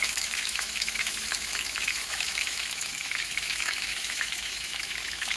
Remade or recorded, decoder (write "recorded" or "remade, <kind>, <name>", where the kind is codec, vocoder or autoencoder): remade, autoencoder, DAC-VAE